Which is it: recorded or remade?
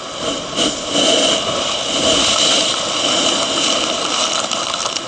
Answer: recorded